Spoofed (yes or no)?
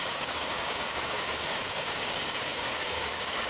yes